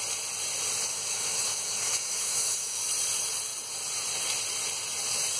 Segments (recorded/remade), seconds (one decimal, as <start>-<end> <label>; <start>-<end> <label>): 0.0-0.9 recorded; 0.9-2.8 remade; 2.8-5.4 recorded